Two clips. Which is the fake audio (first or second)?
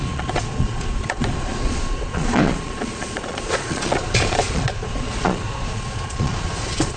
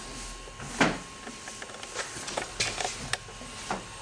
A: first